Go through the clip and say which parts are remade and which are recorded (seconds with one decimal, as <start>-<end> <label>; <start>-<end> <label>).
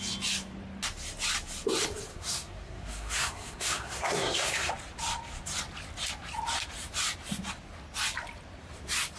0.0-2.1 recorded; 2.1-4.7 remade; 4.7-9.2 recorded